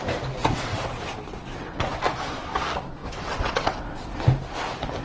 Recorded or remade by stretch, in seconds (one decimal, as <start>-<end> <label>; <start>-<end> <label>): 0.0-0.4 recorded; 0.4-1.0 remade; 1.0-1.5 recorded; 1.5-2.0 remade; 2.0-3.0 recorded; 3.0-4.1 remade; 4.1-5.0 recorded